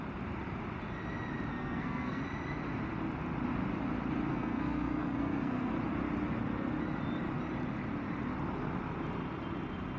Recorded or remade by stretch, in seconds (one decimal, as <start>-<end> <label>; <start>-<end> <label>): 0.0-1.5 recorded; 1.5-2.2 remade; 2.2-4.3 recorded; 4.3-5.7 remade; 5.7-10.0 recorded